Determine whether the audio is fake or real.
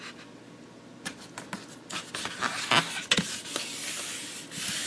real